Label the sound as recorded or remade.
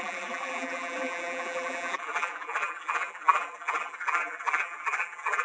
remade